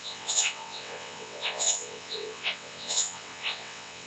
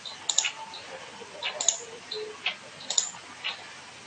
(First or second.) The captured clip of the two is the second